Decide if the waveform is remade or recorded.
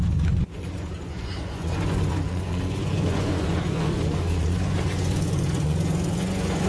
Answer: remade